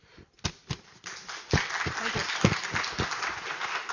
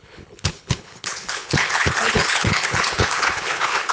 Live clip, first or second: first